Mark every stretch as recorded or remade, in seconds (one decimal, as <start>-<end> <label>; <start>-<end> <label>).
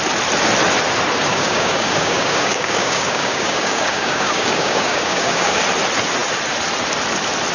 0.0-1.3 recorded; 1.3-5.6 remade; 5.6-7.5 recorded